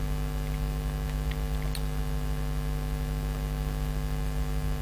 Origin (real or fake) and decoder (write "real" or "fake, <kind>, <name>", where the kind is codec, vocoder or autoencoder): real